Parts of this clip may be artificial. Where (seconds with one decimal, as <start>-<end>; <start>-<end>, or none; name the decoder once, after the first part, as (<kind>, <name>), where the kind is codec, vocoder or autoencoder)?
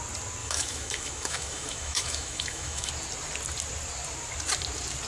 0.4-2.9 (autoencoder, DAC-VAE)